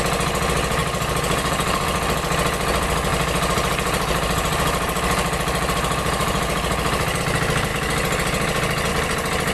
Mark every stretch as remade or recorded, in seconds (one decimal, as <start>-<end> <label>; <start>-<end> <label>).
0.0-0.8 recorded; 0.8-1.8 remade; 1.8-3.1 recorded; 3.1-7.2 remade; 7.2-9.5 recorded